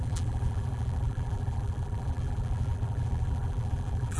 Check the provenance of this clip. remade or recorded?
remade